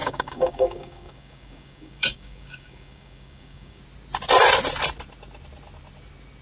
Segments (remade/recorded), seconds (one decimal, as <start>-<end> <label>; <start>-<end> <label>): 0.0-3.8 remade; 3.8-6.4 recorded